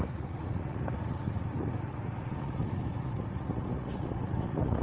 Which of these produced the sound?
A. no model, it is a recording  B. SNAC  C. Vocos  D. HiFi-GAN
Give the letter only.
C